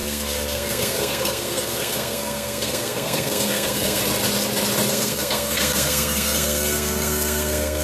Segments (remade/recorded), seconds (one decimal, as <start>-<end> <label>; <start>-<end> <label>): 0.0-4.0 remade; 4.0-4.9 recorded; 4.9-7.8 remade